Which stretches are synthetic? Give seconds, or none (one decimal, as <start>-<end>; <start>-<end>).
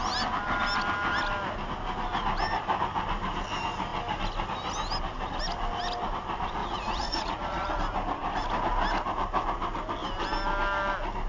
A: 6.6-7.7